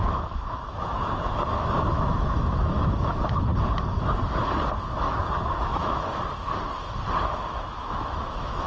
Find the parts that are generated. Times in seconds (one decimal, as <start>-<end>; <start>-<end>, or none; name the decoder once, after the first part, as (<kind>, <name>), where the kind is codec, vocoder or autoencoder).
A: 0.0-3.5 (autoencoder, DAC-VAE); 5.5-6.1; 7.2-8.7

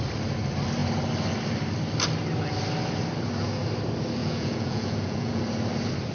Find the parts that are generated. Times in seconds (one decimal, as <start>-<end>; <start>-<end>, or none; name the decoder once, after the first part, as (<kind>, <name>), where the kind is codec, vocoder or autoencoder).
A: 4.2-5.4 (vocoder, Vocos)

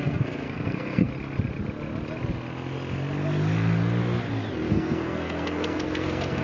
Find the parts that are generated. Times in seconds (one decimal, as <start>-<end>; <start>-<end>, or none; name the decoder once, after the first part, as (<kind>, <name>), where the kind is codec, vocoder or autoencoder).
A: 0.0-1.1 (codec, SNAC); 4.7-6.4

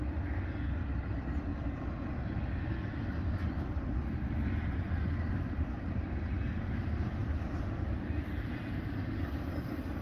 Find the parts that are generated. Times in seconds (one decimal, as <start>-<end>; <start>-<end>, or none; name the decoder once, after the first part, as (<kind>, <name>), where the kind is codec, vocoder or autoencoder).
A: none

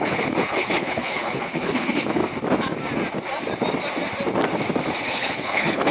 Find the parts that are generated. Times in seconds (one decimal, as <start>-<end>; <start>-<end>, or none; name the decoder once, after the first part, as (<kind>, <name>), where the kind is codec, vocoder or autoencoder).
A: 0.0-2.2 (codec, HILCodec); 5.1-5.9

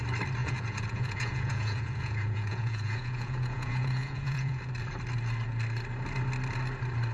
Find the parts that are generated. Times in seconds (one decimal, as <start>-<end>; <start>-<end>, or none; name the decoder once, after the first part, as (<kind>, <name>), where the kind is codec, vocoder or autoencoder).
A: 0.4-4.7 (vocoder, Vocos)

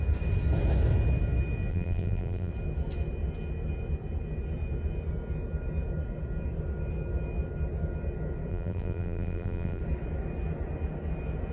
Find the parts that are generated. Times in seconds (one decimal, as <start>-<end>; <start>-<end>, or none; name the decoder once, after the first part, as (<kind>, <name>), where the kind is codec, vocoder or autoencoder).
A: 1.7-2.5 (vocoder, BigVGAN v2); 8.5-9.8

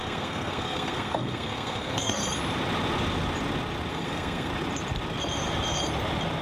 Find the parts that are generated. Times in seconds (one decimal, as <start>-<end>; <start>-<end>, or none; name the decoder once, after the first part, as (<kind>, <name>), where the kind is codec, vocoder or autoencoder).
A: 0.0-2.2 (codec, SNAC); 3.9-4.5